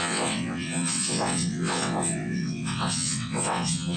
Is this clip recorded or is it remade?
remade